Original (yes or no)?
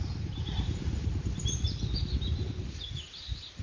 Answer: yes